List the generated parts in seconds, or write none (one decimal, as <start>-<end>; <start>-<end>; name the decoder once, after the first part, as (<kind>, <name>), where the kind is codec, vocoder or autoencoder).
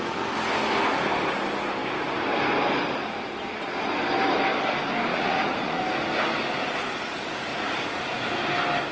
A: 5.1-5.8 (vocoder, Vocos); 7.5-8.3